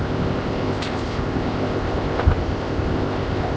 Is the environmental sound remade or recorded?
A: remade